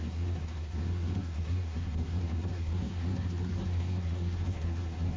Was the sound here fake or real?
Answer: fake